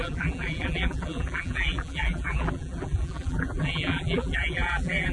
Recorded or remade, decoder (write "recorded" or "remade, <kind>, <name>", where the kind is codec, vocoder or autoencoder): remade, vocoder, BigVGAN v2